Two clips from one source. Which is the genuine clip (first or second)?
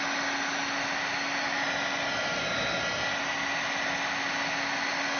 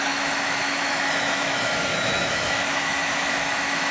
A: first